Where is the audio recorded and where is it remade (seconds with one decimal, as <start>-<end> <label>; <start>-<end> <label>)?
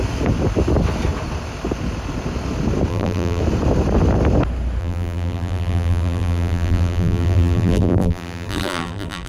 0.0-2.9 recorded; 2.9-3.4 remade; 3.4-4.8 recorded; 4.8-9.3 remade